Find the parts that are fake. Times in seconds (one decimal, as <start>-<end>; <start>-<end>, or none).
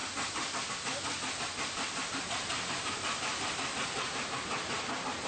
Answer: none